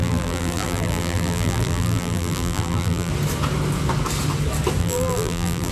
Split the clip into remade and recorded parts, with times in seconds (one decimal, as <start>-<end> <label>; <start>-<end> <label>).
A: 0.0-3.1 remade; 3.1-4.8 recorded; 4.8-5.7 remade